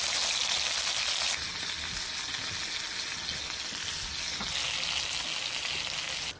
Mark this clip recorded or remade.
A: recorded